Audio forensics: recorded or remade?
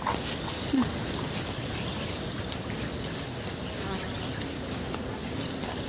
remade